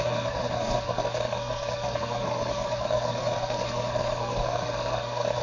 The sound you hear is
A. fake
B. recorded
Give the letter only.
A